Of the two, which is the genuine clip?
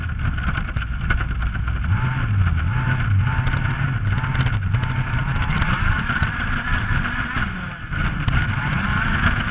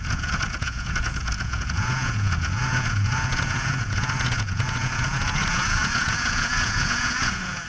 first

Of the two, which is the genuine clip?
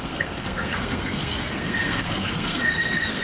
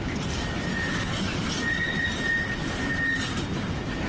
second